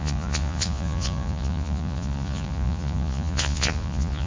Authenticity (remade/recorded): remade